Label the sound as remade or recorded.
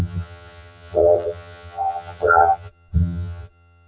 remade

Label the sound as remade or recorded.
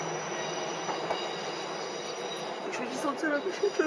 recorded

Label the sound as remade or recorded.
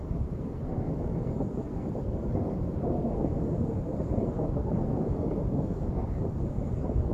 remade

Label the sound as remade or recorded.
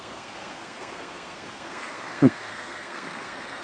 remade